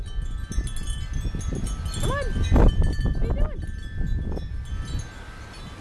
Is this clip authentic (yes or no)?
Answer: yes